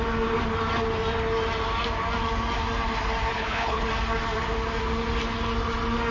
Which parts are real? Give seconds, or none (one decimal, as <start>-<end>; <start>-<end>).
0.0-3.3; 3.9-6.1